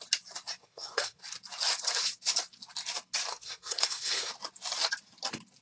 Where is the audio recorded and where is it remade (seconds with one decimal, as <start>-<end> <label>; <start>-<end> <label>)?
0.0-0.6 recorded; 0.6-1.2 remade; 1.2-3.3 recorded; 3.3-4.3 remade; 4.3-5.6 recorded